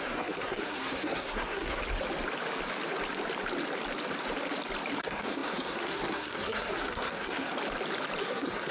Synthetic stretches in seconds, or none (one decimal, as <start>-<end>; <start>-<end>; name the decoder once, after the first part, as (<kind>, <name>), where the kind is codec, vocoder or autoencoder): 0.0-1.8 (codec, SNAC); 5.0-7.5; 8.2-8.7